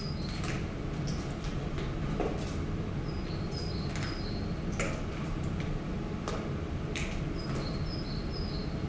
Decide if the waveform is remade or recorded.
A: recorded